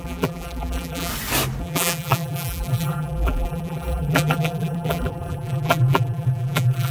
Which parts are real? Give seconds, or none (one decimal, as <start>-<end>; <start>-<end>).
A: 1.1-1.6